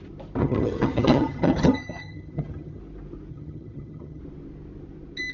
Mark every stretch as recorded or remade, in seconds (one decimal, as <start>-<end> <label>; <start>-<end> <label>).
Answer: 0.0-0.4 recorded; 0.4-2.8 remade; 2.8-3.3 recorded; 3.3-4.2 remade; 4.2-5.3 recorded

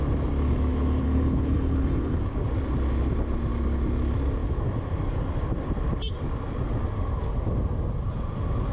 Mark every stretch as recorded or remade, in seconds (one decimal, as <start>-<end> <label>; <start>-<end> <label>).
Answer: 0.0-1.0 recorded; 1.0-2.2 remade; 2.2-8.7 recorded

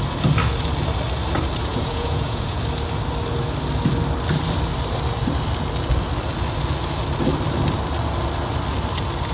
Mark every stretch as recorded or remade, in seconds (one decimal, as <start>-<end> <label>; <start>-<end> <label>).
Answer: 0.0-1.7 recorded; 1.7-2.6 remade; 2.6-9.3 recorded

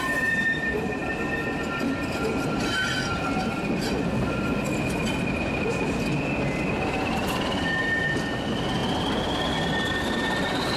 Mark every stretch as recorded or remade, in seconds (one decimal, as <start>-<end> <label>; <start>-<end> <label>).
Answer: 0.0-10.8 recorded